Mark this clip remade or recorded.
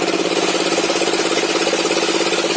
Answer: recorded